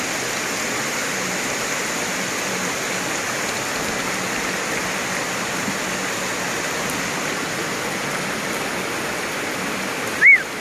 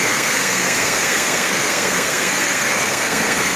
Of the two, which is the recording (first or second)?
first